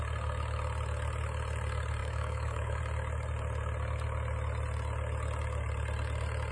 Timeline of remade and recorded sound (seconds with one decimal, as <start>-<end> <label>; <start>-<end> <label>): 0.0-2.0 recorded; 2.0-2.8 remade; 2.8-6.5 recorded